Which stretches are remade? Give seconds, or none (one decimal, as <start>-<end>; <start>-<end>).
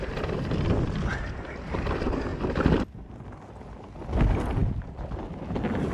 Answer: none